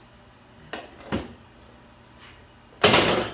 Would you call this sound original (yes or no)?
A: yes